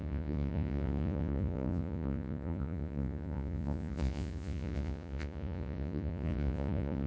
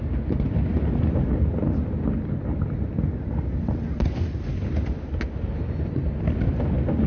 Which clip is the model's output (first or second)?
first